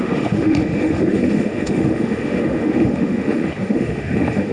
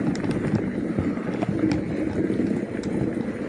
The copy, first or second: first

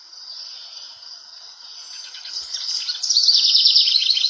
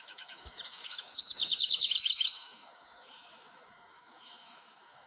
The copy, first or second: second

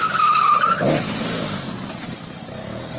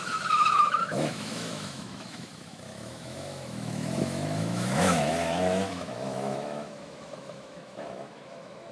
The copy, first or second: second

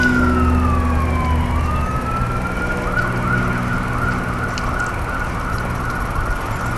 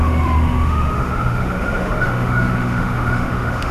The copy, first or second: second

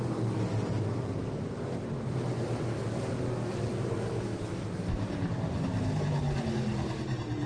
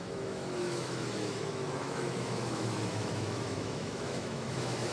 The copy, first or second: second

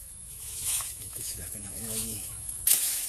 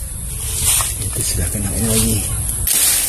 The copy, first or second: first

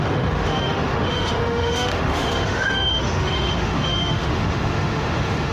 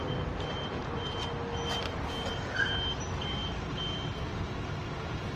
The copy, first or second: first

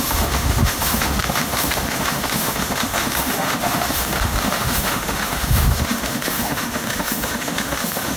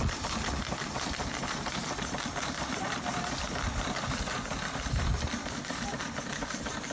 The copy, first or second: first